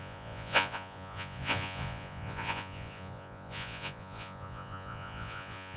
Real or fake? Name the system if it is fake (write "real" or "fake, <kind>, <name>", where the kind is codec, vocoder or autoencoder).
fake, vocoder, Vocos